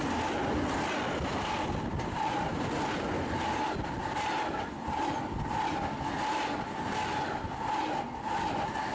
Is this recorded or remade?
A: recorded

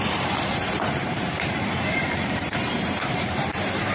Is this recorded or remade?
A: remade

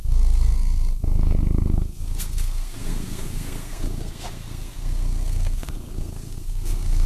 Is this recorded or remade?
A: remade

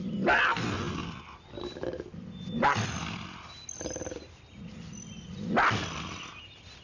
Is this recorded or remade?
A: recorded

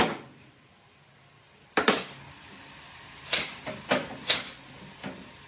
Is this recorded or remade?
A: remade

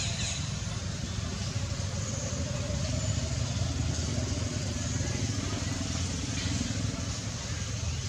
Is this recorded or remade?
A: recorded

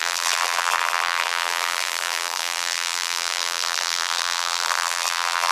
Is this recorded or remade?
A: remade